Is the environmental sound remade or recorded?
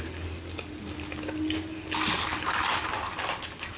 recorded